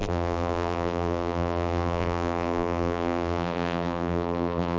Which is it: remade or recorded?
remade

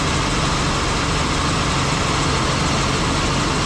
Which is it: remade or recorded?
recorded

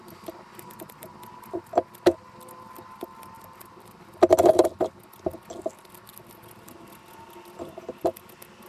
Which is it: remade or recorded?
recorded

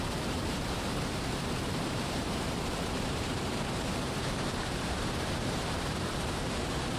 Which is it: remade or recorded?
remade